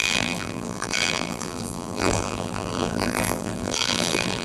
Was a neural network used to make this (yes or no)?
yes